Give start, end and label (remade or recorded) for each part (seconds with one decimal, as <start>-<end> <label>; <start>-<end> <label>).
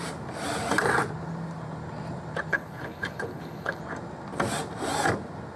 0.0-2.5 recorded; 2.5-3.8 remade; 3.8-5.6 recorded